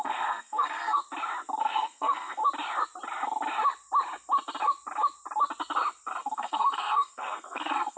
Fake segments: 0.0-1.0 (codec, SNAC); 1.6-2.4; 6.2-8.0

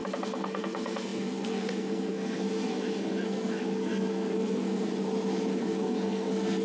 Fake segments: 0.0-4.9 (codec, SNAC); 5.6-6.6

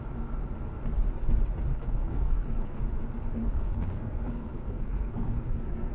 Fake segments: 1.7-2.8 (codec, SNAC); 3.4-5.9

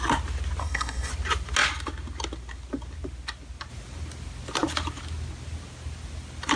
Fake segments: 0.6-1.1 (codec, SNAC)

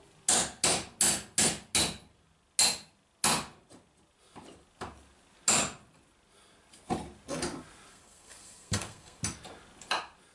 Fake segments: 7.9-9.2 (codec, SNAC)

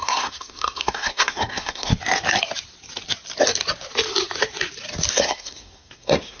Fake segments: 0.0-1.9 (codec, SNAC); 5.1-6.4

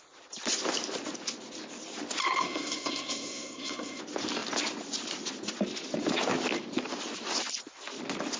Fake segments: 2.2-4.0 (codec, SNAC)